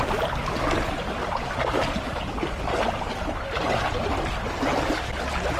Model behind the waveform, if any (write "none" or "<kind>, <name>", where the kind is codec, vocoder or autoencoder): none